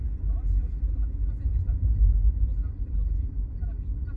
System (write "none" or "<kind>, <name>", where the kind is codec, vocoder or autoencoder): none